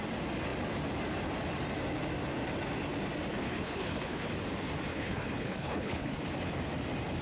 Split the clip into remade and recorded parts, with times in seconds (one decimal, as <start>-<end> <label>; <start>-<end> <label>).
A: 0.0-3.4 recorded; 3.4-4.3 remade; 4.3-4.9 recorded; 4.9-6.2 remade; 6.2-7.2 recorded